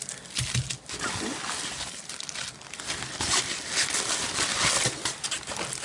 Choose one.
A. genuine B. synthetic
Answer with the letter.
A